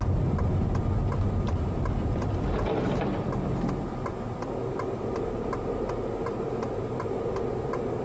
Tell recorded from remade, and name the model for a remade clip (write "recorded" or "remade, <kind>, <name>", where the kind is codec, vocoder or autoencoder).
recorded